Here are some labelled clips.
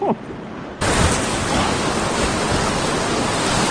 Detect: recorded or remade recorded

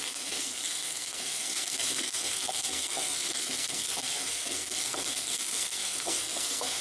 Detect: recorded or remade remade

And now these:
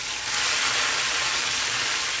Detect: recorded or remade recorded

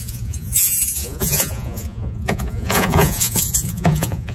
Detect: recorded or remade remade